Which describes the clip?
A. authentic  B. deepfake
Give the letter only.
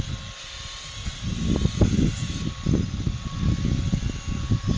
A